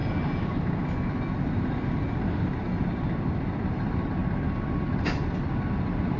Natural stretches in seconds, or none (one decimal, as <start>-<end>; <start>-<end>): 0.0-3.7; 4.2-6.2